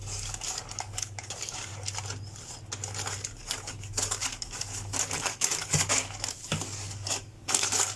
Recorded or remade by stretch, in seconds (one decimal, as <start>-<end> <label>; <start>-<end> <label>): 0.0-1.7 remade; 1.7-3.3 recorded; 3.3-8.0 remade